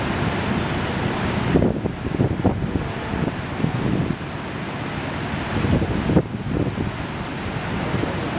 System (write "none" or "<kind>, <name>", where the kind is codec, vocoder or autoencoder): none